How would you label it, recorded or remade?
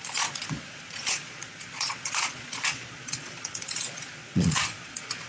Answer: remade